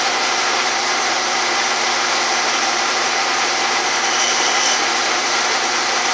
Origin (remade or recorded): remade